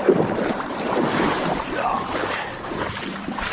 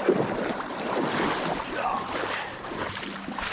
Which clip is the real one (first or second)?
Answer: second